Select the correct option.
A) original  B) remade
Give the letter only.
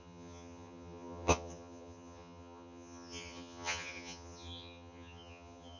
B